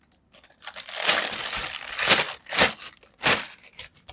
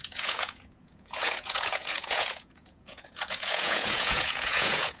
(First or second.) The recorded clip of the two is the first